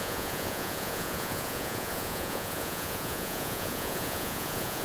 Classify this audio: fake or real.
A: fake